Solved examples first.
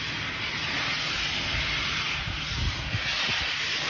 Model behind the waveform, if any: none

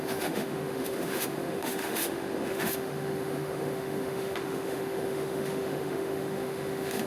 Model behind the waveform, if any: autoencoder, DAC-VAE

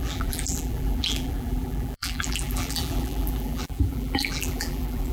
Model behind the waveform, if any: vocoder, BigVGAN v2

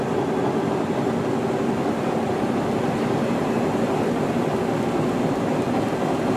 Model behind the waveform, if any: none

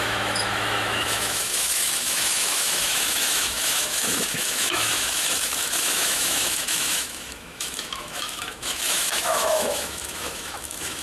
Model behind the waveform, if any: autoencoder, DAC-VAE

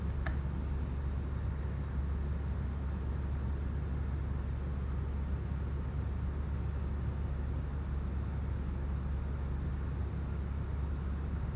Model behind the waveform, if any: none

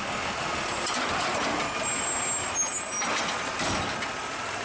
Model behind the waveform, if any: none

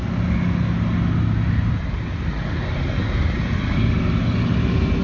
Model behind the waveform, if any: none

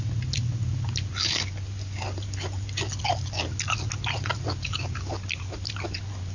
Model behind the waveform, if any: none